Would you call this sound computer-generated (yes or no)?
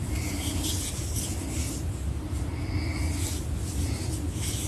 no